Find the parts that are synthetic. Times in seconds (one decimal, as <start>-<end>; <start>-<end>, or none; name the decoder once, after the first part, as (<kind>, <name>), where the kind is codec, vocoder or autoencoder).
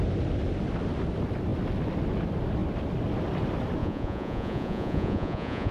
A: 3.8-5.7 (vocoder, Vocos)